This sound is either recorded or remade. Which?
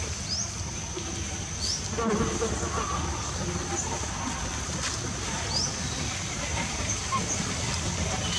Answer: recorded